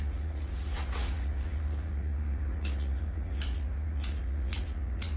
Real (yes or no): no